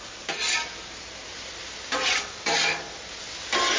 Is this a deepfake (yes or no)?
yes